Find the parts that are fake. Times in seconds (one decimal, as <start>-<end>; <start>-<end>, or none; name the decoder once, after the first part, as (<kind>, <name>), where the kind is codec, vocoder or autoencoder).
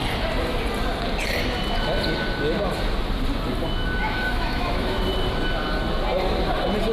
4.0-5.0 (autoencoder, DAC-VAE)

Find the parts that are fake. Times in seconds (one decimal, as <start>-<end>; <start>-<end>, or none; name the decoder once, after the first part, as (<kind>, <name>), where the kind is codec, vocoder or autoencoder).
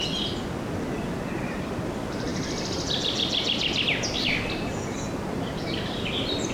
none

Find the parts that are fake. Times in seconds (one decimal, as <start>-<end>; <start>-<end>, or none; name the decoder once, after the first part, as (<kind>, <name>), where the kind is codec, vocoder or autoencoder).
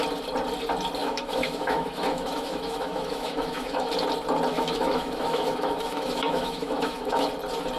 1.0-3.9 (autoencoder, DAC-VAE); 4.5-7.3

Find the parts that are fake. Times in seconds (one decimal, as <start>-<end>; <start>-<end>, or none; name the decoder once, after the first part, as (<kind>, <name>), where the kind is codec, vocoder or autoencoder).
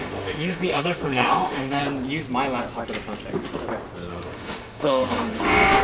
0.0-1.8 (autoencoder, DAC-VAE); 4.1-5.8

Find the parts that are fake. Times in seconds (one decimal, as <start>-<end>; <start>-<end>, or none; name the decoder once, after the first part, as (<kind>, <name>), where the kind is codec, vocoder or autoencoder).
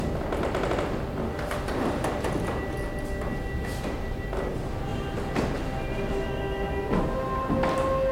none